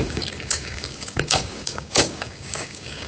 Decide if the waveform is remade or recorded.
remade